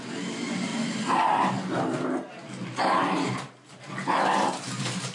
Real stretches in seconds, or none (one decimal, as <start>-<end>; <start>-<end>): 0.0-5.1